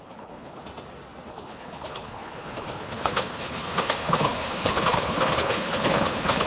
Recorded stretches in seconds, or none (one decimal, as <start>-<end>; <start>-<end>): 0.6-1.3